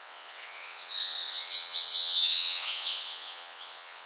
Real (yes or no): no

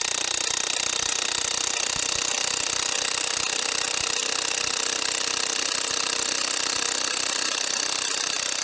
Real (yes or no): yes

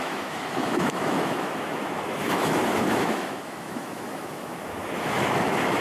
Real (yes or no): no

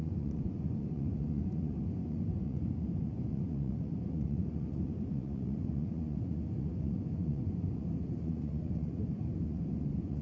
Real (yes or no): no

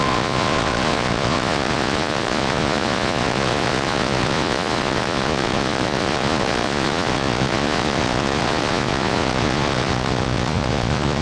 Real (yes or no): no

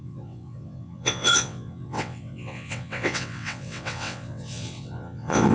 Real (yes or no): no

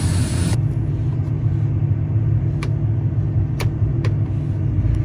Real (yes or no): yes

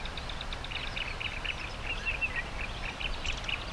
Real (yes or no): yes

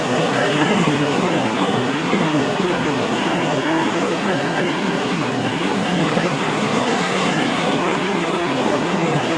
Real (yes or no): no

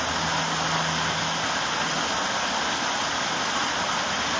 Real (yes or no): yes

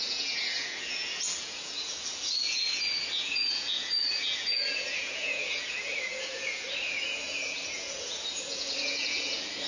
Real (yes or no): no